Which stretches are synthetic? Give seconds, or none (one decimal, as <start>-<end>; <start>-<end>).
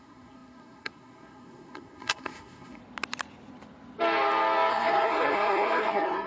0.0-2.8; 4.7-6.3